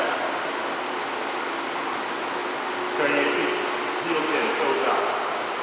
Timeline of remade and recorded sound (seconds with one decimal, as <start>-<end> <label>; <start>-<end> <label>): 0.0-5.6 recorded